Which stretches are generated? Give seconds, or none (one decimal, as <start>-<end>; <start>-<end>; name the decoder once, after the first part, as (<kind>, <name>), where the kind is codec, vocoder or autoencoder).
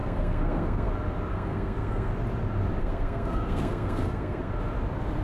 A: 0.0-0.9 (codec, SNAC); 1.3-2.1; 2.8-4.5